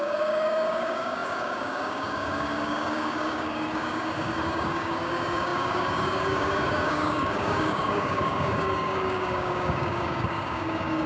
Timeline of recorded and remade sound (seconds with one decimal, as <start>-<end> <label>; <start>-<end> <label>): 0.0-11.1 remade